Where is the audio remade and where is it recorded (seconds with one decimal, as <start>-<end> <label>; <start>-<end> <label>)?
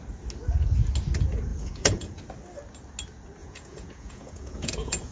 0.0-1.5 recorded; 1.5-2.2 remade; 2.2-3.4 recorded; 3.4-5.1 remade